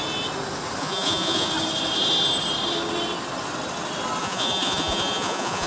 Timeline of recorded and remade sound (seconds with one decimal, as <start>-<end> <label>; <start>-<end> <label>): 0.0-0.8 recorded; 0.8-1.5 remade; 1.5-4.2 recorded; 4.2-5.7 remade